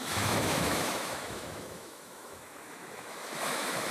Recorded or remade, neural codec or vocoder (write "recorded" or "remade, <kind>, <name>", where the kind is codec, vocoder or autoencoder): remade, autoencoder, DAC-VAE